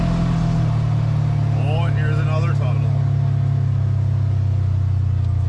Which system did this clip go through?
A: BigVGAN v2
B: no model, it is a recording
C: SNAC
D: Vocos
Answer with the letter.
B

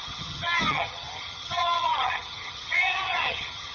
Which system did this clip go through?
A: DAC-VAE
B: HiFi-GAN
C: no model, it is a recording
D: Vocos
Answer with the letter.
B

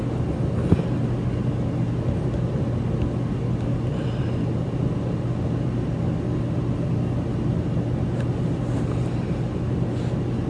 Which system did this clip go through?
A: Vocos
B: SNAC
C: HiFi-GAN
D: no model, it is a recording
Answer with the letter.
D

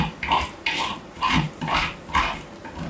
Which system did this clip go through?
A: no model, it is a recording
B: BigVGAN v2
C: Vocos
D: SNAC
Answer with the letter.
A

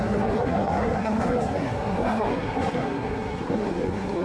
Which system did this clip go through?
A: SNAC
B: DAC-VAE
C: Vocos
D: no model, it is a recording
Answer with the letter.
A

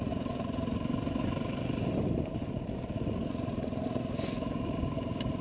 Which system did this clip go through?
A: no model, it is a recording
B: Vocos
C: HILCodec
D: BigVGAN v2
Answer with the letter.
D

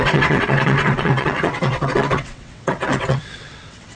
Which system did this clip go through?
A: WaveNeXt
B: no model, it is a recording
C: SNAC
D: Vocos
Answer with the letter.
A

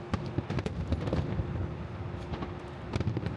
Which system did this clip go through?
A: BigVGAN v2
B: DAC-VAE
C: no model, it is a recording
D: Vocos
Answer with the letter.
C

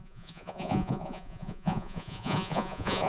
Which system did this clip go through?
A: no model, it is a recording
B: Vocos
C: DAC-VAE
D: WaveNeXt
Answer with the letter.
B